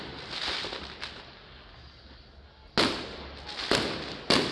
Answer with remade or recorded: recorded